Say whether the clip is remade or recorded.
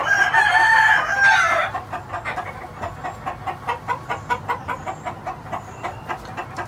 recorded